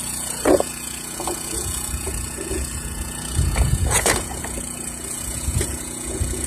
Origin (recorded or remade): remade